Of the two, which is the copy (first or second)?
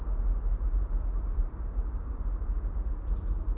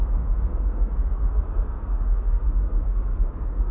second